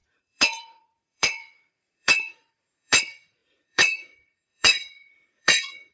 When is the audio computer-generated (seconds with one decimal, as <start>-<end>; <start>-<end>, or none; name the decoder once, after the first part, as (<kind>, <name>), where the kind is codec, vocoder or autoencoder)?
0.0-5.9 (vocoder, Vocos)